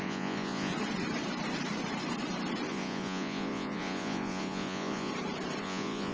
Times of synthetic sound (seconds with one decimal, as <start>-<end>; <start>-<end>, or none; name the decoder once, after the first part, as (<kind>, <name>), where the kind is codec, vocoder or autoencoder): 0.0-0.7 (vocoder, Vocos); 2.7-5.1; 5.6-6.1